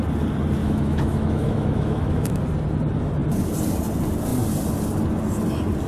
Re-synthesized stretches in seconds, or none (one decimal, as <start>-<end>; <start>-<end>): 0.6-2.4